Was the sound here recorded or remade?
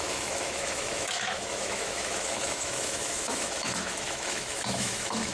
remade